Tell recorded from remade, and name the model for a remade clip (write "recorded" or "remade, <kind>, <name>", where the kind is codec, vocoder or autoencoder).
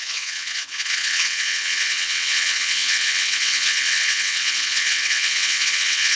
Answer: remade, vocoder, WaveNeXt